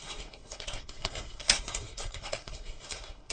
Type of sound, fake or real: fake